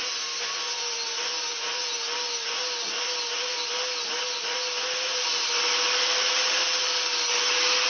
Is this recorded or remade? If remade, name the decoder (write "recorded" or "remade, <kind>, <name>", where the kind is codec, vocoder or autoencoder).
recorded